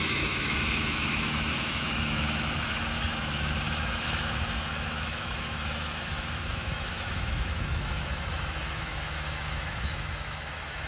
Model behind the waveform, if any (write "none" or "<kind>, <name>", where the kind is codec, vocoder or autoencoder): autoencoder, DAC-VAE